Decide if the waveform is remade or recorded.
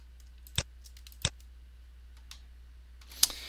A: recorded